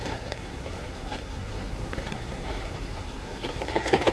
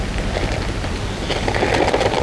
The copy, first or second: first